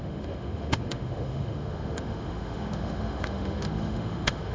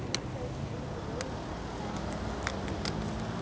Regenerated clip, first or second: first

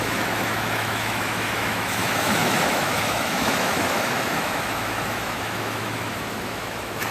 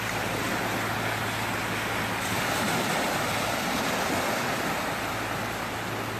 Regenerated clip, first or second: first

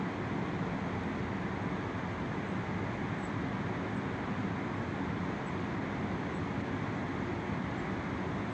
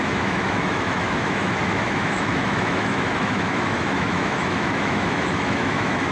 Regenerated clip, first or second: second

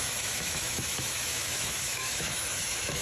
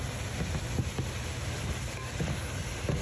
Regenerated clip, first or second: first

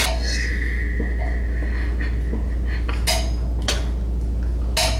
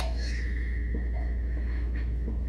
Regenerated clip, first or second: second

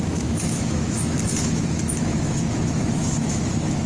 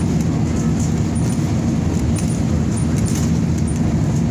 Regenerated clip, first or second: first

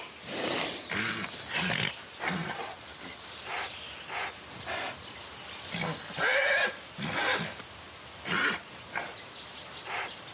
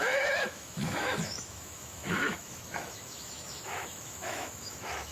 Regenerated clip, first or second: second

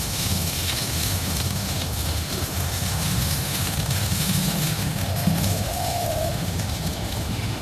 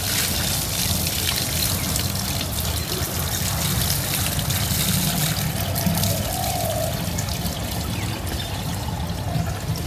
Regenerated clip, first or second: first